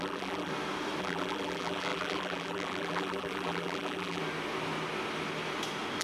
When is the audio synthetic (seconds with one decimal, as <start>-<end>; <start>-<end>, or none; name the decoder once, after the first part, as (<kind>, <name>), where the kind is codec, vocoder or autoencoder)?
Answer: 0.0-0.5 (vocoder, BigVGAN v2); 1.0-4.2